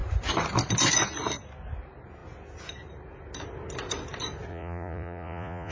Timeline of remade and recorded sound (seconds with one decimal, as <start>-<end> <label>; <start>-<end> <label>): 0.0-4.5 recorded; 4.5-5.7 remade